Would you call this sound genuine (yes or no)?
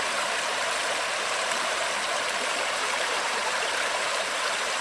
no